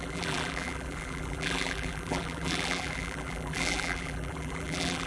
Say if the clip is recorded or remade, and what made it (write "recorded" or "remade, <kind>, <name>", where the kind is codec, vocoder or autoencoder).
remade, vocoder, BigVGAN v2